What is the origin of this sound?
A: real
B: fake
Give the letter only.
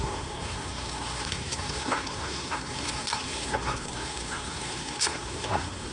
B